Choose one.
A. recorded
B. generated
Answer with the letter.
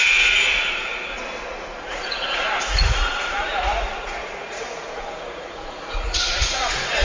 B